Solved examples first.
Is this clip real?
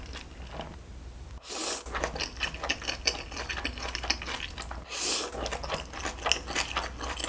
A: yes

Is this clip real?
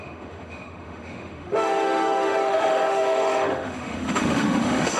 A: no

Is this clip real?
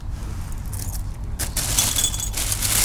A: yes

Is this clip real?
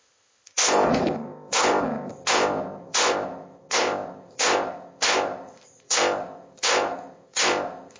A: no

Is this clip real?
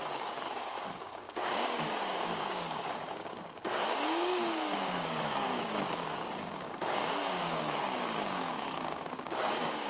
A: no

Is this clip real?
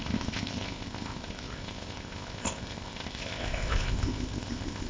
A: no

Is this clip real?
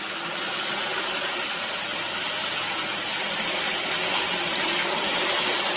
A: yes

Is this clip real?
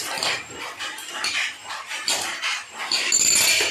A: yes